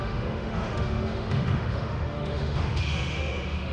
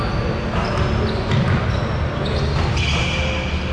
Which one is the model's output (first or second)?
first